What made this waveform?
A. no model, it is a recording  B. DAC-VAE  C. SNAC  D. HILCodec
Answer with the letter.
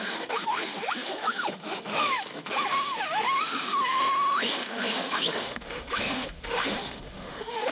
B